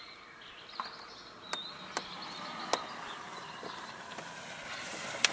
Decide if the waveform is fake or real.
real